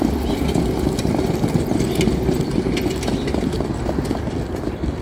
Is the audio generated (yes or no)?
no